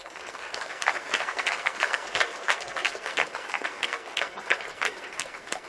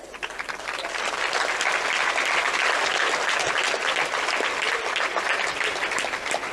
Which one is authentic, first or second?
second